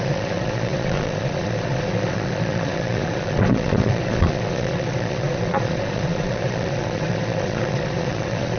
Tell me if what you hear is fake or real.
fake